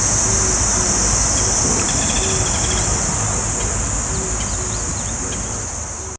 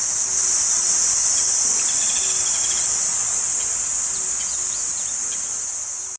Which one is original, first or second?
first